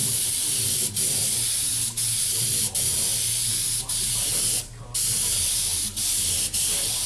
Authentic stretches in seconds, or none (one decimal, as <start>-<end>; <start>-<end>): 0.0-7.1